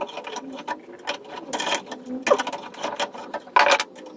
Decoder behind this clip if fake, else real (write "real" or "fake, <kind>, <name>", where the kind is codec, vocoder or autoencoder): real